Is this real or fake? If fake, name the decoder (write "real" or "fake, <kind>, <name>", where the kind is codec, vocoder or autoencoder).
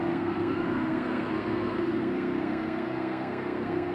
fake, codec, SNAC